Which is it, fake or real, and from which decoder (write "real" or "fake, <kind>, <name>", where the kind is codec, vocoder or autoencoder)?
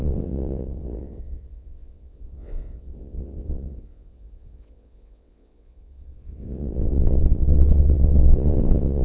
fake, vocoder, WaveNeXt